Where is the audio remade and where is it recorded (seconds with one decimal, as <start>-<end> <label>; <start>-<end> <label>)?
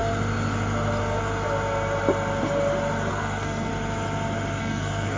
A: 0.0-3.1 recorded; 3.1-3.7 remade; 3.7-4.6 recorded; 4.6-5.2 remade